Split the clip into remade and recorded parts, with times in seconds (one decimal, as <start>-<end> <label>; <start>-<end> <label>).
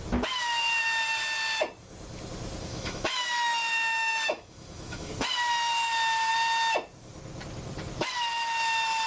0.0-2.7 recorded; 2.7-5.1 remade; 5.1-9.1 recorded